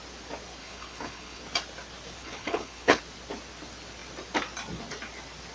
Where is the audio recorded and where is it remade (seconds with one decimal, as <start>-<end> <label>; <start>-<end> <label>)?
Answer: 0.0-0.6 recorded; 0.6-1.4 remade; 1.4-2.2 recorded; 2.2-3.0 remade; 3.0-5.5 recorded